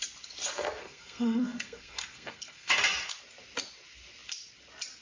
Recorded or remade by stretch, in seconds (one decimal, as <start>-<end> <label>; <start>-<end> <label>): 0.0-0.8 recorded; 0.8-2.8 remade; 2.8-5.0 recorded